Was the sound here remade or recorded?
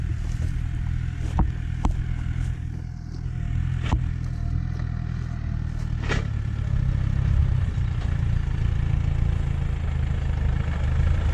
recorded